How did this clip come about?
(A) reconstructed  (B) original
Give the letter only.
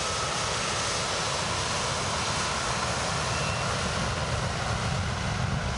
B